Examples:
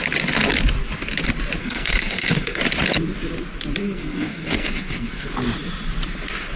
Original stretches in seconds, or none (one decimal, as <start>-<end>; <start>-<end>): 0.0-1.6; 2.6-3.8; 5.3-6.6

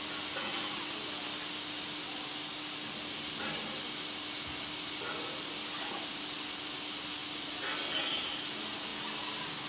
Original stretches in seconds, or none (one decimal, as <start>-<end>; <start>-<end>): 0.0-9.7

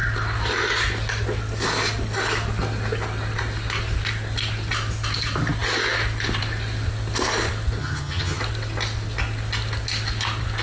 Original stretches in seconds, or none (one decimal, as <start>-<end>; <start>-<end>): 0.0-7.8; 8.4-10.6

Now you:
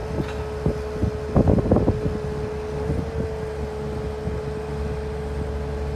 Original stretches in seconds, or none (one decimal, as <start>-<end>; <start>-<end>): 0.0-6.0

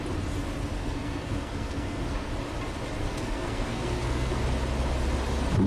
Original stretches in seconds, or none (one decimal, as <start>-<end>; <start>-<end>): 0.0-0.8; 2.3-3.0; 4.4-5.7

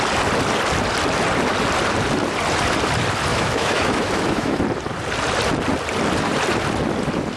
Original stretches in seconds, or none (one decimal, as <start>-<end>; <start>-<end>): 0.0-3.3; 4.6-7.4

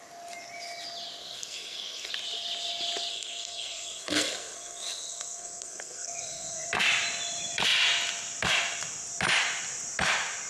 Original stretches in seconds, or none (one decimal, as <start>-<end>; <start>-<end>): 0.0-1.2; 2.1-3.1; 6.7-10.5